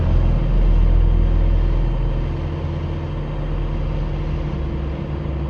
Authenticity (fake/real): real